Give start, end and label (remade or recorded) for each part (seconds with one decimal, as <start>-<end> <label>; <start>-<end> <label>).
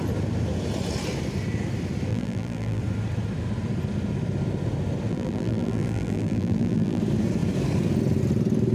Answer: 0.0-2.1 recorded; 2.1-2.8 remade; 2.8-5.1 recorded; 5.1-7.0 remade; 7.0-8.7 recorded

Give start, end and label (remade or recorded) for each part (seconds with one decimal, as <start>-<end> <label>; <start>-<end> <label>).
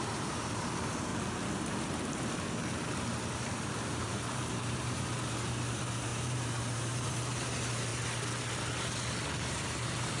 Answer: 0.0-1.1 remade; 1.1-3.4 recorded; 3.4-7.9 remade; 7.9-9.5 recorded; 9.5-10.2 remade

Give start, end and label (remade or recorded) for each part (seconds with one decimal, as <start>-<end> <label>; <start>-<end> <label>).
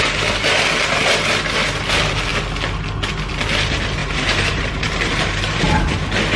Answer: 0.0-4.0 recorded; 4.0-5.6 remade; 5.6-6.4 recorded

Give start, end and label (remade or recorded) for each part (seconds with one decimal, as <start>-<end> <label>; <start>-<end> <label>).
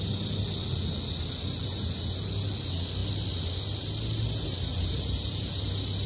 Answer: 0.0-4.7 recorded; 4.7-5.4 remade; 5.4-6.1 recorded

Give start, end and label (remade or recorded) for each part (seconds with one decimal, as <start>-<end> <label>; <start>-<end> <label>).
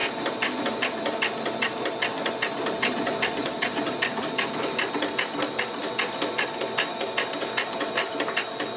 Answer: 0.0-8.8 recorded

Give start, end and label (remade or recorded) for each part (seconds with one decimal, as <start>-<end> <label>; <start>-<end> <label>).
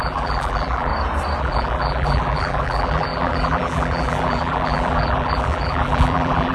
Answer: 0.0-0.9 remade; 0.9-1.4 recorded; 1.4-6.5 remade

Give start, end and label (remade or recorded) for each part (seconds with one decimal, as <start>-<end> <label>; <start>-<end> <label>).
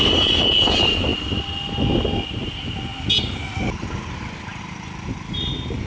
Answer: 0.0-1.1 remade; 1.1-4.6 recorded; 4.6-5.9 remade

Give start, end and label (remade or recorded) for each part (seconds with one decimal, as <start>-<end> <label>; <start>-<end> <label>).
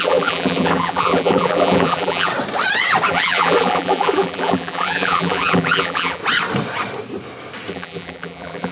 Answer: 0.0-2.3 remade; 2.3-3.1 recorded; 3.1-6.2 remade; 6.2-7.7 recorded; 7.7-8.7 remade